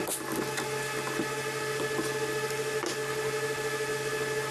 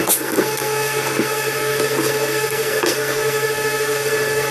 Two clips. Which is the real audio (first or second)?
first